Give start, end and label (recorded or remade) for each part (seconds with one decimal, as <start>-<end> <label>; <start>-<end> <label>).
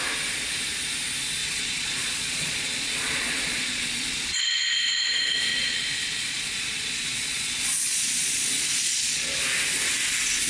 0.0-1.4 recorded; 1.4-4.4 remade; 4.4-5.5 recorded; 5.5-9.4 remade; 9.4-10.5 recorded